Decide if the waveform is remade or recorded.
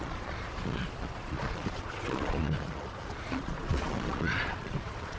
remade